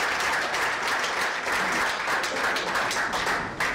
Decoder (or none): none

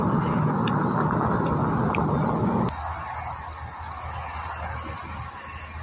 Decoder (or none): none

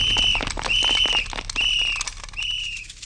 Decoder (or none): none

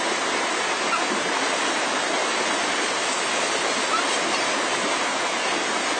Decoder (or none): none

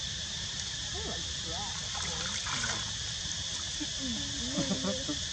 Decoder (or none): vocoder, BigVGAN v2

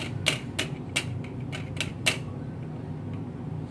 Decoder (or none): none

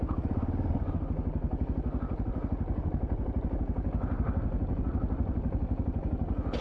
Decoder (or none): none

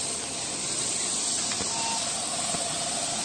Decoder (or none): none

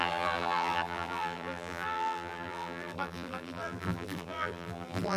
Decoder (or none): vocoder, BigVGAN v2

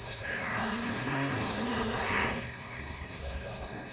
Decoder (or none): codec, SNAC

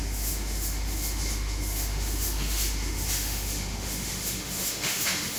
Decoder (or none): autoencoder, DAC-VAE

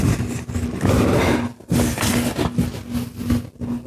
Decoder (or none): none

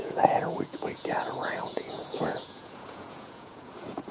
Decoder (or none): vocoder, Vocos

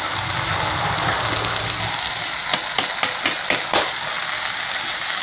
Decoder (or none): none